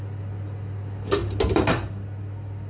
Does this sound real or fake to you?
real